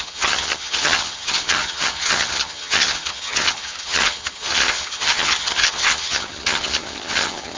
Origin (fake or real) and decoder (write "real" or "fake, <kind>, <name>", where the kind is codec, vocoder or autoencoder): fake, vocoder, HiFi-GAN